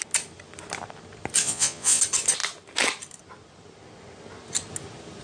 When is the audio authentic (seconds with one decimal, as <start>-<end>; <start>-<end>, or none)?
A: 0.0-1.4; 2.0-5.2